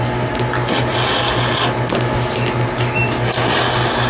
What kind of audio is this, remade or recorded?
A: recorded